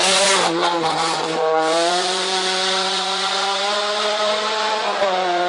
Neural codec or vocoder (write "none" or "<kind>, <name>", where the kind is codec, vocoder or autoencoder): vocoder, Vocos